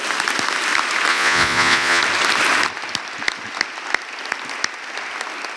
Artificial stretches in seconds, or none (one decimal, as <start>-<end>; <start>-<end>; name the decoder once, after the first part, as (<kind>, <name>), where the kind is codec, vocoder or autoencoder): 1.1-2.0 (vocoder, Vocos)